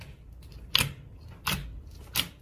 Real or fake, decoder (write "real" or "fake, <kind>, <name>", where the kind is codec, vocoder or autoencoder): real